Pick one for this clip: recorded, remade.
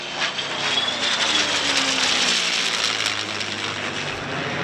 recorded